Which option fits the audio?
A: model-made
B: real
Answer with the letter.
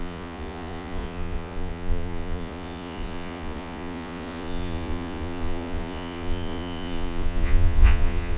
A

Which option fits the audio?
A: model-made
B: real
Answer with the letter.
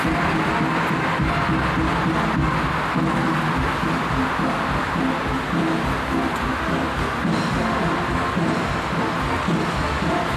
B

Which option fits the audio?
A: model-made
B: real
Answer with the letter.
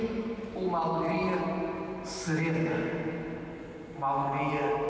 B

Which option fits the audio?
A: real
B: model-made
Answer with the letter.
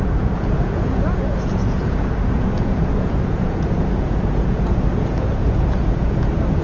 B